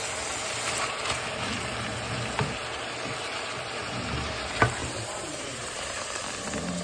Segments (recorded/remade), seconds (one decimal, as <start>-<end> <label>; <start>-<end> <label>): 0.0-4.8 recorded; 4.8-6.2 remade; 6.2-6.8 recorded